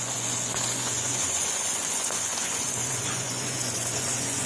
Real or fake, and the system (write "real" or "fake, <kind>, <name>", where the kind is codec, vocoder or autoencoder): fake, vocoder, Vocos